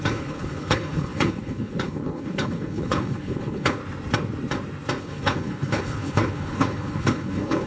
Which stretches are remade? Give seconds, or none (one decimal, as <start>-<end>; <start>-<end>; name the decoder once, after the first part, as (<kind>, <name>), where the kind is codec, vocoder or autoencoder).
0.0-3.8 (codec, HILCodec); 5.0-7.7